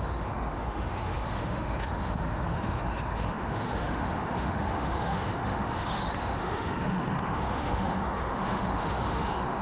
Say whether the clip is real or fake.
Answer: fake